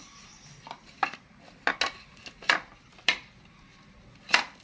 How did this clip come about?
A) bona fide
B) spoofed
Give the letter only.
A